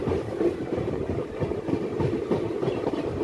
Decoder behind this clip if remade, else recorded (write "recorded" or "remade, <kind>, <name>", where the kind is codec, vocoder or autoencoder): remade, vocoder, BigVGAN v2